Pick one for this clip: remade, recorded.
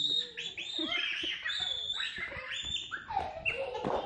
remade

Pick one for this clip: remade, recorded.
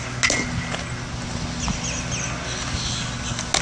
recorded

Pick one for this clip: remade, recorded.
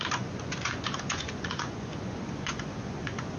remade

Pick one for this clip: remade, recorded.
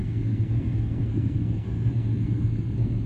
remade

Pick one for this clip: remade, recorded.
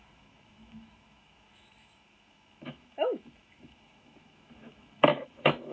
remade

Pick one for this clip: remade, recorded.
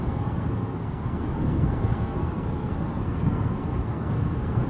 remade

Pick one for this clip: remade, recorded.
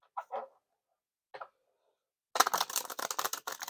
recorded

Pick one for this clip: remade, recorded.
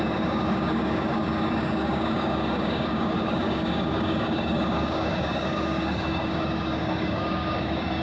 remade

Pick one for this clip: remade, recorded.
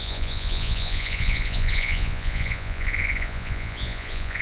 remade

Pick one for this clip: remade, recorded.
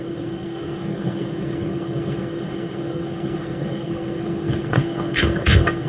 remade